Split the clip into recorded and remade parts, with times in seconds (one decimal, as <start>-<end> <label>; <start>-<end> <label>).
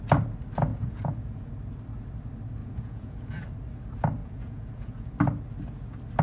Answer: 0.0-0.7 recorded; 0.7-1.5 remade; 1.5-2.6 recorded; 2.6-3.3 remade; 3.3-4.2 recorded; 4.2-5.1 remade; 5.1-6.2 recorded